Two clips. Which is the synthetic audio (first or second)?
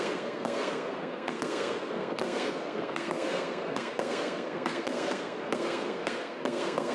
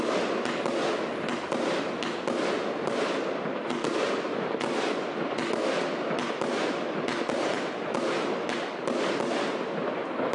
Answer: first